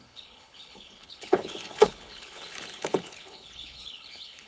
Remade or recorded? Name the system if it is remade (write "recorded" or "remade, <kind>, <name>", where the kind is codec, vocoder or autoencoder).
remade, codec, HILCodec